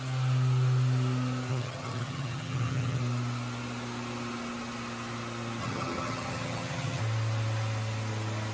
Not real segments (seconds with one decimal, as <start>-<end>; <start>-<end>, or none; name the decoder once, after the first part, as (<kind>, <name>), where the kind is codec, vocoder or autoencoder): 1.5-3.0 (vocoder, HiFi-GAN); 5.6-7.0